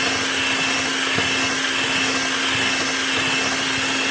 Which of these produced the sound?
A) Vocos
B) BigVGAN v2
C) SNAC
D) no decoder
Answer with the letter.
D